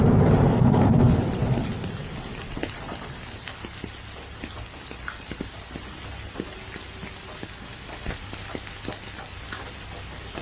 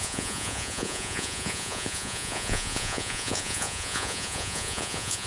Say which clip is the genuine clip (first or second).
first